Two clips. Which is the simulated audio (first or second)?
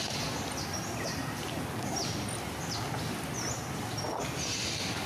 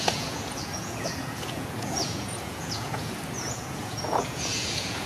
second